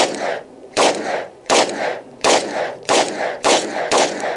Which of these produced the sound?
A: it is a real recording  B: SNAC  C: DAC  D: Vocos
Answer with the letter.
D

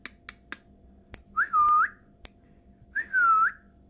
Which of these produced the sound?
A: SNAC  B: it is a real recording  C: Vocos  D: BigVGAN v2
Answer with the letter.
B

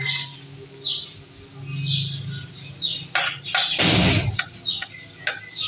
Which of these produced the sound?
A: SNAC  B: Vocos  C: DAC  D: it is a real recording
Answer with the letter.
D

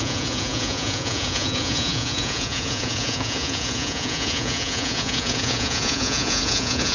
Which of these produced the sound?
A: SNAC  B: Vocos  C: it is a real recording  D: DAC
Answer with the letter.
B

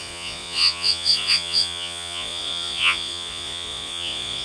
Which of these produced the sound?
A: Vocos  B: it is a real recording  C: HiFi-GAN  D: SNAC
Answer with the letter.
A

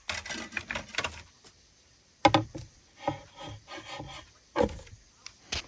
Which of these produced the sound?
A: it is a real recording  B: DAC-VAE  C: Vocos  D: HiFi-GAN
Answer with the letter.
A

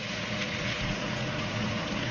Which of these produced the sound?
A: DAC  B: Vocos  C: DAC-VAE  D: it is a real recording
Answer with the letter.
B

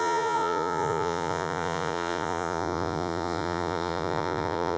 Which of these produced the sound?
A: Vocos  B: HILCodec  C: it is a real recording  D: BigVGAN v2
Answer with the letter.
A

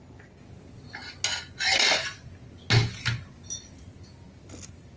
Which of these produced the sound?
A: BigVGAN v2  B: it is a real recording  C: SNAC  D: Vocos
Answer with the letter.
B